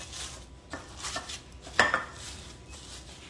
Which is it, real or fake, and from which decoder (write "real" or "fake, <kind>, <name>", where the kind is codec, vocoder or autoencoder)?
real